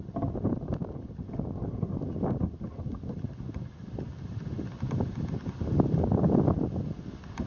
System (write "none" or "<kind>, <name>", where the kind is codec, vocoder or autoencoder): none